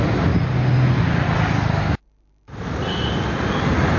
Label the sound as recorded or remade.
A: recorded